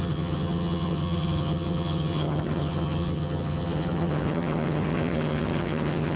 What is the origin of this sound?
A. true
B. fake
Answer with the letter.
B